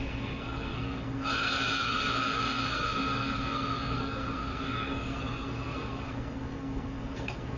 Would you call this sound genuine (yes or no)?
no